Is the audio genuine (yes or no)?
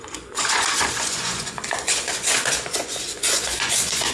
no